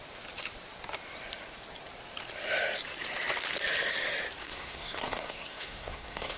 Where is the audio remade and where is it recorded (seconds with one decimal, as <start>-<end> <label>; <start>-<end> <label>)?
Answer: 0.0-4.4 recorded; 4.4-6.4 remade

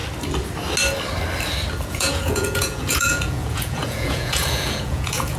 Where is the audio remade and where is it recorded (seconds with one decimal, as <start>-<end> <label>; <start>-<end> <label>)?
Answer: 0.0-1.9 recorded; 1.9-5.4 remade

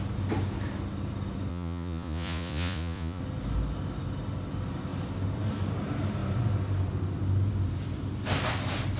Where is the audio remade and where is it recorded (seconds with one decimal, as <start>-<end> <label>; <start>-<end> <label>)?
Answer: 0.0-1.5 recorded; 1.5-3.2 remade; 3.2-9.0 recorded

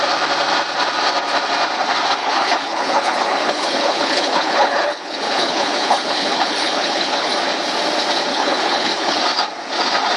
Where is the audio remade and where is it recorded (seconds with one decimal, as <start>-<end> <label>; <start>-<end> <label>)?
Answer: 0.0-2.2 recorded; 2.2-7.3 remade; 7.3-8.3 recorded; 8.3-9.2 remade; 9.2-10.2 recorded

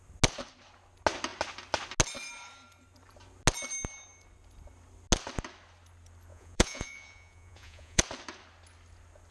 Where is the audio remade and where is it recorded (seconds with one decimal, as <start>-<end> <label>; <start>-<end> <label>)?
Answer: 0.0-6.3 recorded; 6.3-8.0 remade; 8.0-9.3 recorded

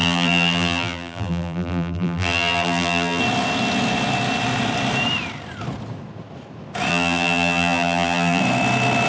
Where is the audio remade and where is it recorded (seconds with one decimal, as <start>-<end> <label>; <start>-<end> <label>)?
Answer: 0.0-3.2 remade; 3.2-6.9 recorded; 6.9-8.4 remade; 8.4-9.1 recorded

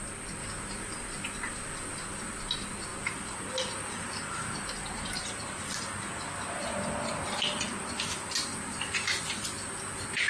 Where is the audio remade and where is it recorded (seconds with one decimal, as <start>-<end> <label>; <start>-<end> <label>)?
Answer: 0.0-2.9 recorded; 2.9-6.1 remade; 6.1-10.3 recorded

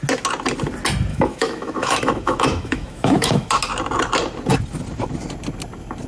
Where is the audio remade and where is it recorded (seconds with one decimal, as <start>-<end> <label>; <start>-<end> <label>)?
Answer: 0.0-1.1 recorded; 1.1-3.5 remade; 3.5-6.1 recorded